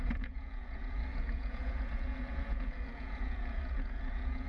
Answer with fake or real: fake